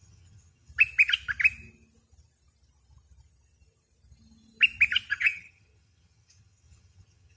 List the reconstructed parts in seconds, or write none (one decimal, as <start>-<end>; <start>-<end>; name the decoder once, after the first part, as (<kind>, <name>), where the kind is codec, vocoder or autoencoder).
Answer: 0.0-0.7 (vocoder, HiFi-GAN); 5.1-7.4